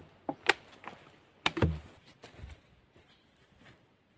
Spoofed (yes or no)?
no